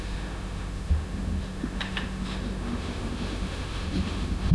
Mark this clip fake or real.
fake